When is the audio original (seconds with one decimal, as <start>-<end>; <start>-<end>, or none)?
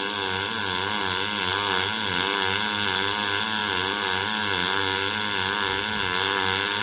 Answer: 0.0-6.8